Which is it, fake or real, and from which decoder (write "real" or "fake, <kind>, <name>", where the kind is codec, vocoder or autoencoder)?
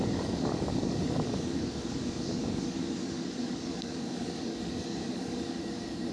fake, codec, DAC